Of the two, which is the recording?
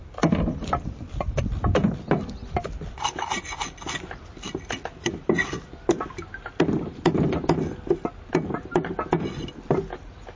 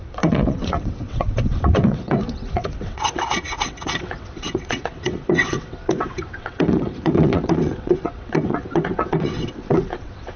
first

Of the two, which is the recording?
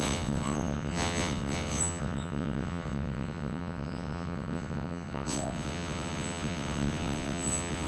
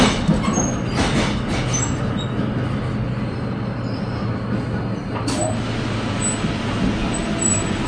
second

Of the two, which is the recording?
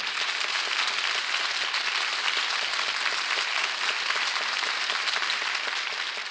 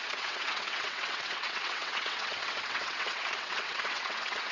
first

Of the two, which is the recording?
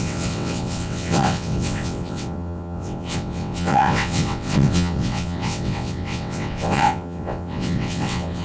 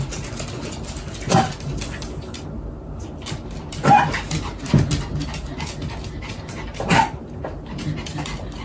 second